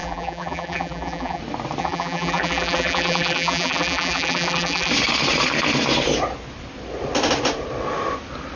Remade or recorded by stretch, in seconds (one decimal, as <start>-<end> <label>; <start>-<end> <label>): 0.0-1.4 remade; 1.4-1.8 recorded; 1.8-4.9 remade; 4.9-8.6 recorded